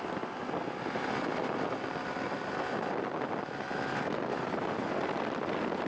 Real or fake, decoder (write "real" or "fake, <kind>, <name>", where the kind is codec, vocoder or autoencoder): real